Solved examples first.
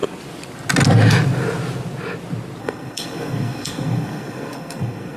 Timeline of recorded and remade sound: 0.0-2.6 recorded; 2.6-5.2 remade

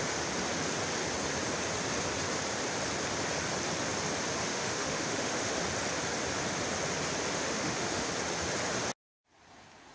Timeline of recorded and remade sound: 0.0-4.5 recorded; 4.5-5.6 remade; 5.6-7.3 recorded; 7.3-8.1 remade; 8.1-9.9 recorded

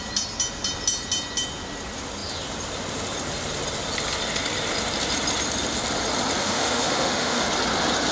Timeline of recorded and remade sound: 0.0-6.4 recorded; 6.4-7.4 remade; 7.4-8.1 recorded